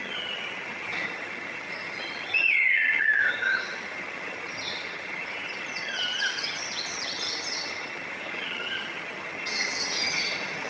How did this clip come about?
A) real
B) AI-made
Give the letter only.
B